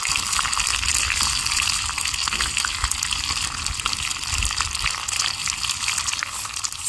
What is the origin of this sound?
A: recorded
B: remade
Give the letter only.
A